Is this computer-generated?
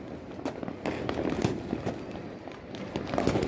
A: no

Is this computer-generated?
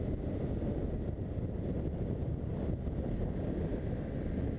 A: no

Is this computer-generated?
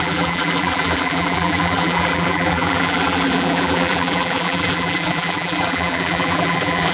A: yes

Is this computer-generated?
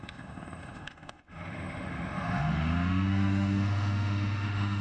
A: yes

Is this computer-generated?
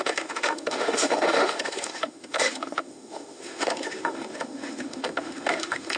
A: yes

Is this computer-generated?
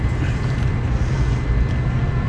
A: no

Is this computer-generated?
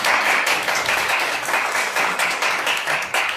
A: yes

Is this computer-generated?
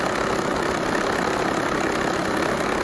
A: no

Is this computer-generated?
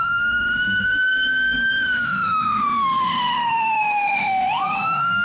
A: yes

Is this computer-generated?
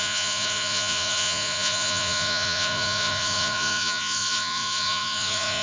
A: yes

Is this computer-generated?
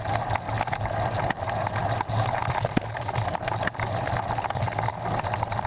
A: no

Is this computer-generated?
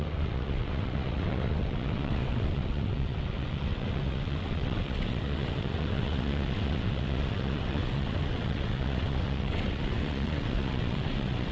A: yes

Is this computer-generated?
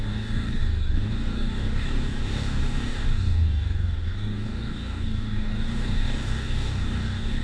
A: yes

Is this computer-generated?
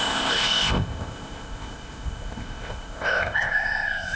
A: yes